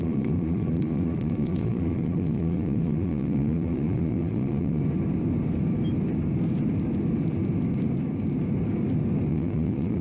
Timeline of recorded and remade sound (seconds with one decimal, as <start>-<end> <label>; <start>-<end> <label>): 0.0-4.8 remade; 4.8-9.3 recorded; 9.3-10.0 remade